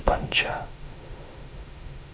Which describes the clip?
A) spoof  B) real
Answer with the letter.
A